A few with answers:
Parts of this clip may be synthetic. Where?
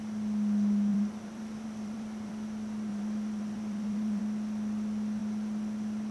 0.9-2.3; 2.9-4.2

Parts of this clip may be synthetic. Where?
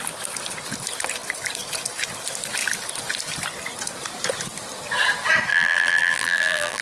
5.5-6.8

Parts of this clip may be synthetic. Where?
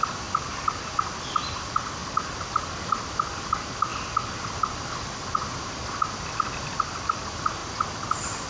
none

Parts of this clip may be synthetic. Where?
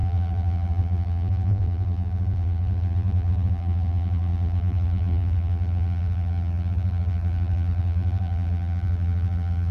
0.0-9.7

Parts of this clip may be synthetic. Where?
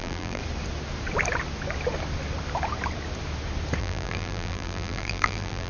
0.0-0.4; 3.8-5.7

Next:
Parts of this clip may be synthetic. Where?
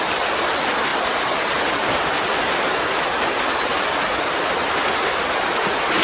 none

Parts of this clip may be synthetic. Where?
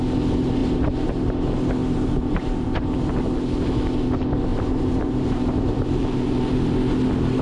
1.8-3.1; 4.5-6.4